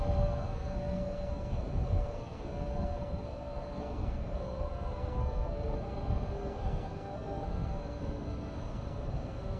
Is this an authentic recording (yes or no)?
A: no